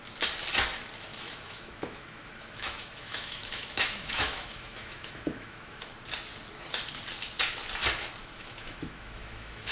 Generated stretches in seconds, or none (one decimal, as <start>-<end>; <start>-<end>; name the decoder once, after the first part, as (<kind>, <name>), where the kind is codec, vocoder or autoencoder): 1.1-5.9 (autoencoder, DAC-VAE); 8.2-9.7